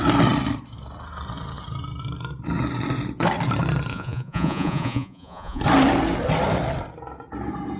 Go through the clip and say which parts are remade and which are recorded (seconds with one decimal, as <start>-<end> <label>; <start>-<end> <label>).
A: 0.0-3.9 recorded; 3.9-5.6 remade; 5.6-7.8 recorded